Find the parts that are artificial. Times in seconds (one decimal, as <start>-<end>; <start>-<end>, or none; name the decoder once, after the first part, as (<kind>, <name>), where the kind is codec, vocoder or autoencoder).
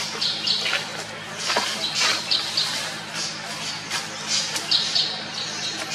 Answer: none